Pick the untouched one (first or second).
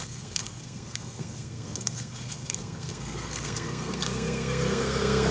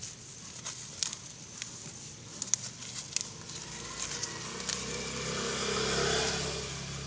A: second